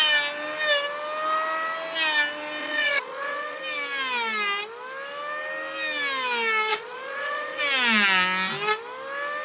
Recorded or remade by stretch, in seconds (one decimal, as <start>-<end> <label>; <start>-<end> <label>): 0.0-2.6 recorded; 2.6-3.6 remade; 3.6-6.7 recorded; 6.7-7.6 remade; 7.6-9.4 recorded